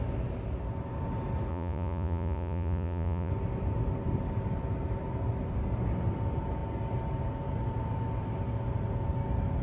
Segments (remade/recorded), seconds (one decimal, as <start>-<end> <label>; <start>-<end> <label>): 0.0-1.5 recorded; 1.5-3.3 remade; 3.3-9.6 recorded